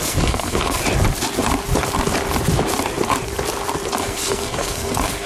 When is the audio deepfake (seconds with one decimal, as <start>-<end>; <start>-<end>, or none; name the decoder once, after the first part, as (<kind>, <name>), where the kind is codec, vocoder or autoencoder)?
0.0-0.8 (codec, SNAC); 4.0-5.3